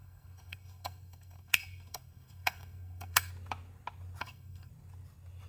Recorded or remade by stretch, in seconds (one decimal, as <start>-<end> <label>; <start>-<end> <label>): 0.0-3.3 remade; 3.3-4.2 recorded; 4.2-4.7 remade; 4.7-5.5 recorded